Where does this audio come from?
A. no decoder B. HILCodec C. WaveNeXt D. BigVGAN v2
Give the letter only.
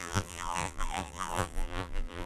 D